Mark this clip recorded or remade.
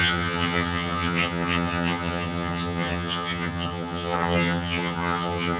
remade